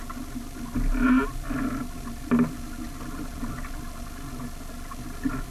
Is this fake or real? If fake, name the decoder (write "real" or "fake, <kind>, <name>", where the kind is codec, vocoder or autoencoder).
real